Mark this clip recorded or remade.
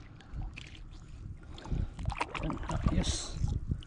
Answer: recorded